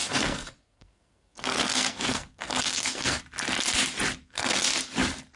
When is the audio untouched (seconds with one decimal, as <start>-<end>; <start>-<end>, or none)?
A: 3.2-4.2; 4.7-5.4